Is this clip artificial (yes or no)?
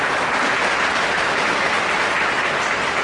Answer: no